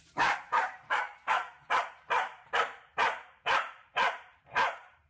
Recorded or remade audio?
remade